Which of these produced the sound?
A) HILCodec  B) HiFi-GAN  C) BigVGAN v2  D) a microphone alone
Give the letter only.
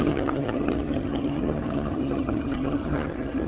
B